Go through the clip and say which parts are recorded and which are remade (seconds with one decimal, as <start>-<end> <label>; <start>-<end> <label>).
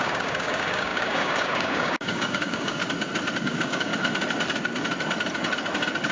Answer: 0.0-2.8 remade; 2.8-3.4 recorded; 3.4-3.9 remade; 3.9-6.1 recorded